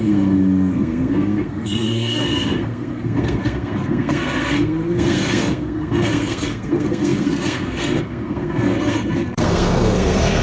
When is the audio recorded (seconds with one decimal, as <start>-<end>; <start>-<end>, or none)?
none